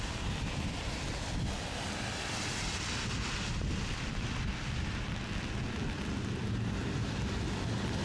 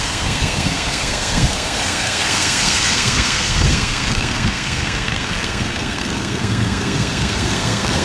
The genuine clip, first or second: first